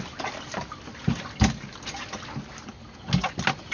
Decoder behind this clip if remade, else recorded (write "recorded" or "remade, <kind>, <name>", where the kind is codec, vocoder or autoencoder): recorded